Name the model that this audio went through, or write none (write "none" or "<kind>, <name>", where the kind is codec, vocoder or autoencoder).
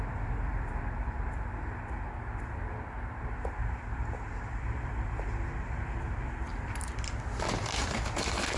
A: vocoder, BigVGAN v2